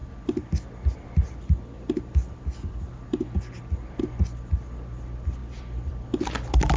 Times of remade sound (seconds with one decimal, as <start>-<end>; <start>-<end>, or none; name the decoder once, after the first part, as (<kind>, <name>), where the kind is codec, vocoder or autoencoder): none